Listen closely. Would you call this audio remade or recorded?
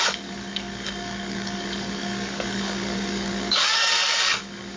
remade